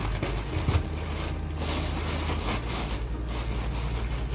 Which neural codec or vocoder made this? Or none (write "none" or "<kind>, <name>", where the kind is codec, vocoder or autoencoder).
none